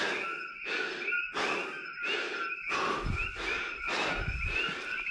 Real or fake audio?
real